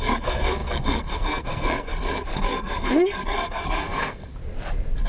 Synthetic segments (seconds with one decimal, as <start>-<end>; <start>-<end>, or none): 0.0-4.3